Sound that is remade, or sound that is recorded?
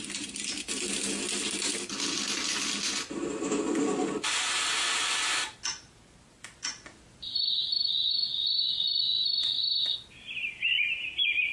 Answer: recorded